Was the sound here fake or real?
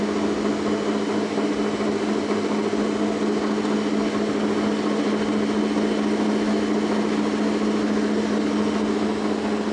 real